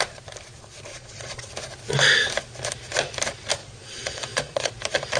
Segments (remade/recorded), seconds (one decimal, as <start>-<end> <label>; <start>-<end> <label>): 0.0-0.9 recorded; 0.9-1.5 remade; 1.5-3.6 recorded; 3.6-4.7 remade; 4.7-5.2 recorded